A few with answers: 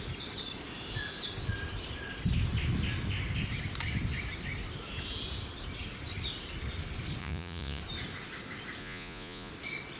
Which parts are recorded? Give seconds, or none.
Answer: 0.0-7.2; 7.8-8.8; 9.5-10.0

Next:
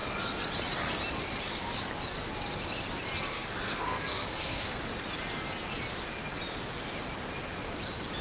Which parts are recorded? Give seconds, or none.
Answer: 0.0-3.3; 4.8-8.2